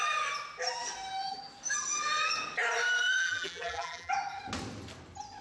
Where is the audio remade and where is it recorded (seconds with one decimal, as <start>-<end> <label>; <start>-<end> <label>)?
0.0-3.2 recorded; 3.2-4.1 remade; 4.1-5.4 recorded